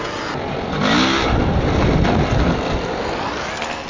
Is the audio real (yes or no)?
yes